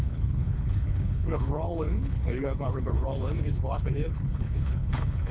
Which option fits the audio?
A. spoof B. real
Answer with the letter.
A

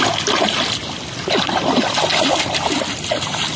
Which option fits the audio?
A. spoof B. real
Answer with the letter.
B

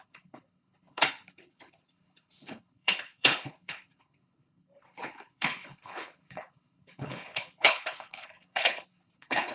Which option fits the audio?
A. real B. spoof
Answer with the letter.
B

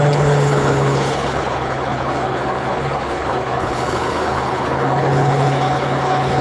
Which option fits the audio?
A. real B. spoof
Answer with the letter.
B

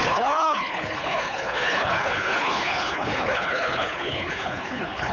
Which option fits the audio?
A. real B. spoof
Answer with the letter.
B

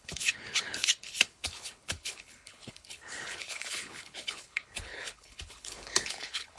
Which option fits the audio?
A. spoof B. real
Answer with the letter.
A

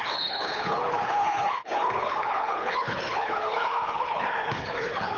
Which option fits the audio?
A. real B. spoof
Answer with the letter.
B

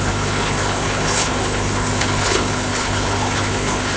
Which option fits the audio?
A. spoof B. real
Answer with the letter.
A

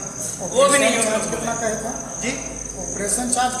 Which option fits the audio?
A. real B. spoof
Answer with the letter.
A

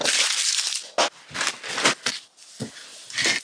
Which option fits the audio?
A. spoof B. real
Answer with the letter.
B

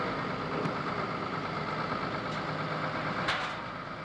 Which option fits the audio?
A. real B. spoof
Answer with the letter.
A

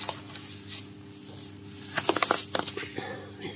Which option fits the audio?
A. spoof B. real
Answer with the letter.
B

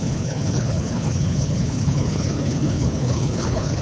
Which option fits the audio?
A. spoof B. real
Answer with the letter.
A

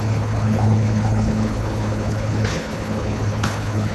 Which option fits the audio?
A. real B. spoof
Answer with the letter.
B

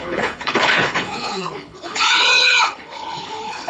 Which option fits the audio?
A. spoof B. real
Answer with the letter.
A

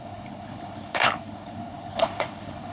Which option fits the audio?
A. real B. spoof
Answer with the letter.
B